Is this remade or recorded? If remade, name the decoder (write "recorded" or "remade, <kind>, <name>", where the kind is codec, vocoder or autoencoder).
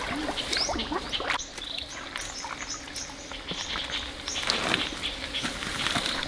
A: recorded